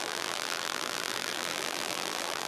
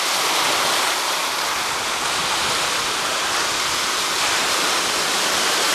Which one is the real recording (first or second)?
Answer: second